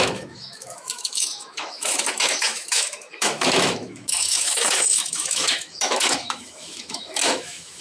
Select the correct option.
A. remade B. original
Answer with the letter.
A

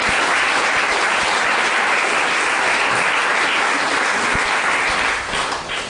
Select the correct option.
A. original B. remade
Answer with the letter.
A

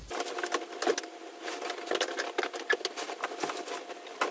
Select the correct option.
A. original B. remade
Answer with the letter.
A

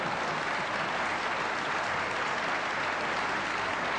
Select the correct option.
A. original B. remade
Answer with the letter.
A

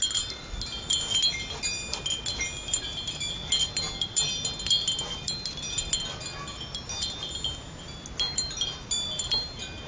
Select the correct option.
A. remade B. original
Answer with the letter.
B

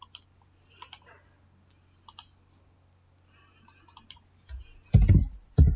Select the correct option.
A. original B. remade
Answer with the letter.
A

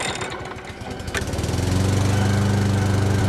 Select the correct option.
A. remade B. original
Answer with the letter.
B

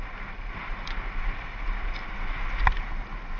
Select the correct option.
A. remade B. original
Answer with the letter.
B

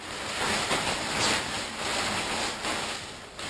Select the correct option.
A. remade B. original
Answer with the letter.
B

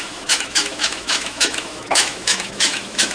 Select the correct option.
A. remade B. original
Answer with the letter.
A